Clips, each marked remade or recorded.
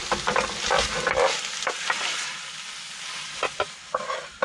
recorded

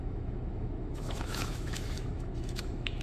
remade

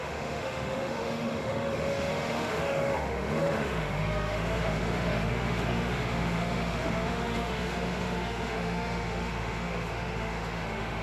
remade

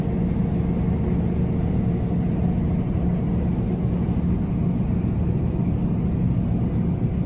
recorded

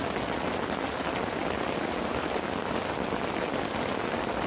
recorded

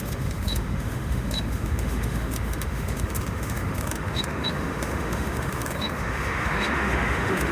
remade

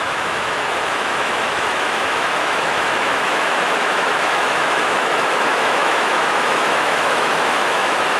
remade